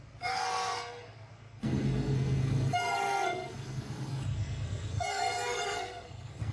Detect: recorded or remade remade